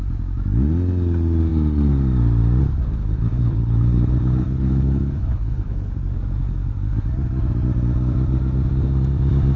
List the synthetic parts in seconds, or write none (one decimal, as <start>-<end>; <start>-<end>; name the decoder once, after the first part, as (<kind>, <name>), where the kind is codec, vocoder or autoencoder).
3.0-5.9 (codec, HILCodec)